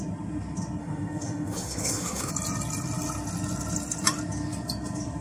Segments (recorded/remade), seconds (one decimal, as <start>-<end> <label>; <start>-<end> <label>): 0.0-0.8 recorded; 0.8-2.3 remade; 2.3-5.2 recorded